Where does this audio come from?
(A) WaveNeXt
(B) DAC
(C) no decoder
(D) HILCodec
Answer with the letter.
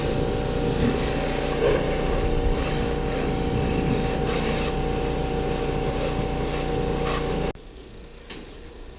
C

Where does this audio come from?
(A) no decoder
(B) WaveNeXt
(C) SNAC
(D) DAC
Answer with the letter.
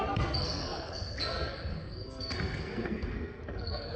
C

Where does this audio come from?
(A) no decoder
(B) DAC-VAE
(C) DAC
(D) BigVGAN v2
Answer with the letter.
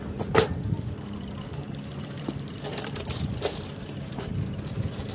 D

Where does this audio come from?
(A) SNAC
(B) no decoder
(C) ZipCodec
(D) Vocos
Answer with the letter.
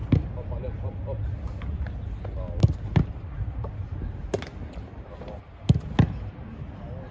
B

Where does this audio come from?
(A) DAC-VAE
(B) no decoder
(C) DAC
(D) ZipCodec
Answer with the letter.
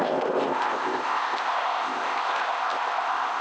D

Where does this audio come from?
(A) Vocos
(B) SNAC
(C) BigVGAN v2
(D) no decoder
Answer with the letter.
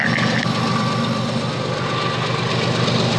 D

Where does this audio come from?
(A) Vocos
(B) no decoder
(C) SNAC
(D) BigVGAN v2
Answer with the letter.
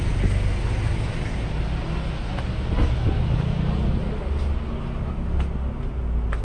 B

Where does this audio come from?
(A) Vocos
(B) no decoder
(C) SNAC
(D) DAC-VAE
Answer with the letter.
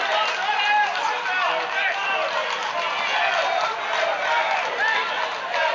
B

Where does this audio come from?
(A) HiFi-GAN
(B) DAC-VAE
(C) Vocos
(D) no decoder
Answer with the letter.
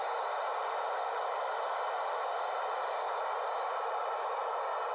D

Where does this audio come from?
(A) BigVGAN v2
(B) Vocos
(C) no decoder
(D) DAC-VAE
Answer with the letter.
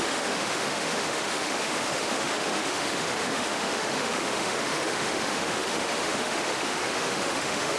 D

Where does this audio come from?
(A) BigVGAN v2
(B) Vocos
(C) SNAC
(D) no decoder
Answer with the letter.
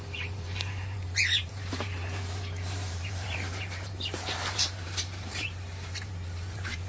A